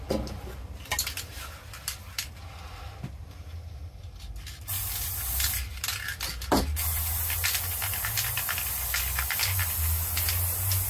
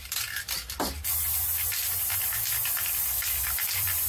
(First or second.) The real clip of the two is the first